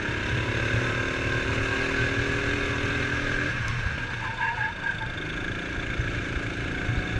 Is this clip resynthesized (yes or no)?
no